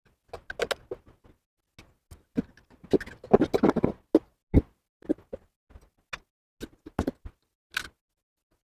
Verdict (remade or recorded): recorded